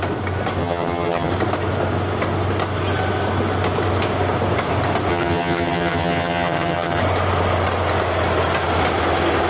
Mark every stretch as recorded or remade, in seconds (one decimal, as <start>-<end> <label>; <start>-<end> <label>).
0.0-0.6 recorded; 0.6-1.3 remade; 1.3-5.1 recorded; 5.1-7.0 remade; 7.0-9.5 recorded